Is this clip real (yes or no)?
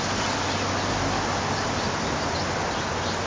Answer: yes